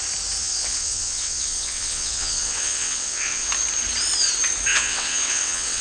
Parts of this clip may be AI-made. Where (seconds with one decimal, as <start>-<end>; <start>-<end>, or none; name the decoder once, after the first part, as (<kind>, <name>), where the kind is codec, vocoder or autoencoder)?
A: 0.4-3.5 (vocoder, WaveNeXt); 4.7-5.8